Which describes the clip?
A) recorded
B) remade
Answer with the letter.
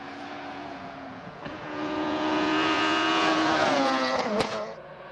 B